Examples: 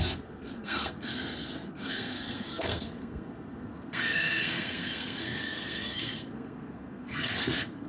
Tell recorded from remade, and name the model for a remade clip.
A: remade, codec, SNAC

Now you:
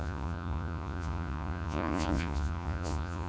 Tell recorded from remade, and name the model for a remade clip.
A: remade, vocoder, Vocos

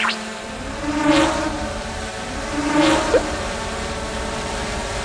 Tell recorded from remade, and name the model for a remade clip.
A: remade, vocoder, BigVGAN v2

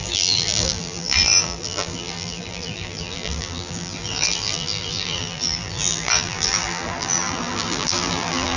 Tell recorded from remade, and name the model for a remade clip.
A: remade, vocoder, BigVGAN v2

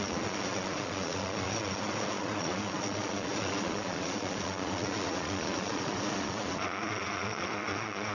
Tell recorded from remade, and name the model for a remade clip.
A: remade, vocoder, Vocos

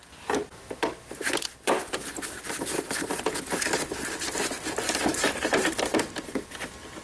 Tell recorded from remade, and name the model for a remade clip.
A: recorded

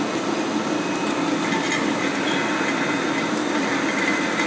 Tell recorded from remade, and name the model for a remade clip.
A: recorded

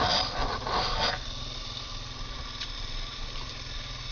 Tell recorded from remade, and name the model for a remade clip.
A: recorded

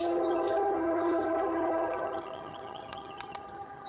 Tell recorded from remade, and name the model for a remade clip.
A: remade, vocoder, HiFi-GAN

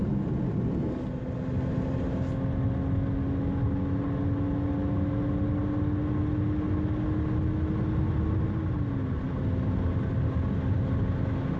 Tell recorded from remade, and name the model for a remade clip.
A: recorded